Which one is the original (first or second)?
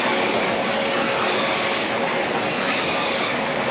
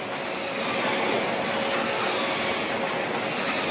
second